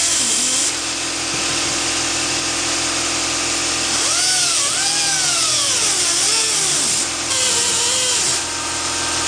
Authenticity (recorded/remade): recorded